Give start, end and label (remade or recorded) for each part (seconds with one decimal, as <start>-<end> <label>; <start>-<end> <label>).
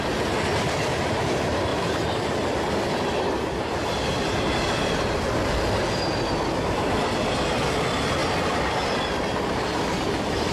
0.0-8.2 recorded; 8.2-10.5 remade